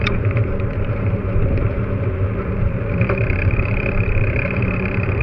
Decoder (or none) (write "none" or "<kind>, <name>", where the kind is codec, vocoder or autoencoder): vocoder, BigVGAN v2